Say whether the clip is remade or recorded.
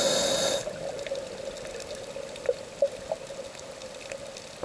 recorded